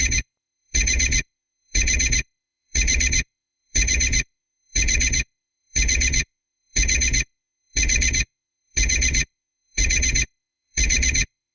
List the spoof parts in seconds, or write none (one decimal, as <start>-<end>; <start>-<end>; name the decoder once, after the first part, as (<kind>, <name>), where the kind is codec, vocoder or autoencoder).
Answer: 0.0-11.5 (vocoder, WaveNeXt)

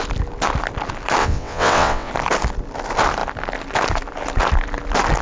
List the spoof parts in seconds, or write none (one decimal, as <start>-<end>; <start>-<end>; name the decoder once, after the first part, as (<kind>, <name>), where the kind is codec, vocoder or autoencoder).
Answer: 1.2-2.1 (vocoder, WaveNeXt)

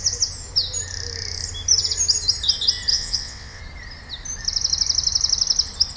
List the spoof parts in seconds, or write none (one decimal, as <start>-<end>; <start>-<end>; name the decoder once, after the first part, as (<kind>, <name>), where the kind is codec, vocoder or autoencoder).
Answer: 2.9-3.6 (vocoder, WaveNeXt)

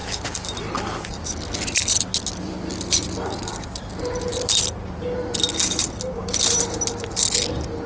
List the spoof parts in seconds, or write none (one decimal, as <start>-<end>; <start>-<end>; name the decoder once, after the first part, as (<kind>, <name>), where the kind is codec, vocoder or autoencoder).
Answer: none

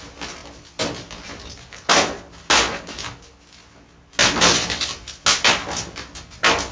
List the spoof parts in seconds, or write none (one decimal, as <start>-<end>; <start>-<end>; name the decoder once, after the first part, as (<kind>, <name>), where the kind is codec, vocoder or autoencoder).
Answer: none

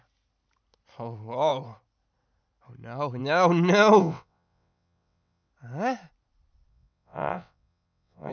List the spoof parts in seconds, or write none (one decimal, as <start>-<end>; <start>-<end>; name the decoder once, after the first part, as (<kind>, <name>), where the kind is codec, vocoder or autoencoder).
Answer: 4.0-5.5 (vocoder, WaveNeXt); 6.7-8.3

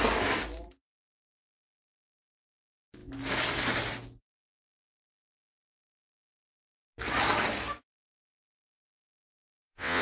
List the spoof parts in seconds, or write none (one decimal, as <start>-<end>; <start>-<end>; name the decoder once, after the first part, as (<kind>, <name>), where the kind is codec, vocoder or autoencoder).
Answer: 9.2-10.0 (vocoder, WaveNeXt)